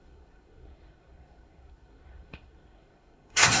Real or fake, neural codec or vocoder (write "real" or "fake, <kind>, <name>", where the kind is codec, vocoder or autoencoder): fake, codec, SNAC